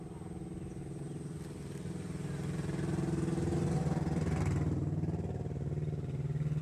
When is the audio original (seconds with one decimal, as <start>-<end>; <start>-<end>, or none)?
0.0-6.6